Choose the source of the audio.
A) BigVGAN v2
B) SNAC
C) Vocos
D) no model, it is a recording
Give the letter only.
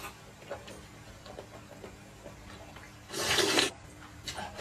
D